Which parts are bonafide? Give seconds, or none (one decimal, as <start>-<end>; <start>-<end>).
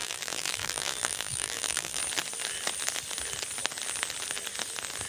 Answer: 2.0-5.1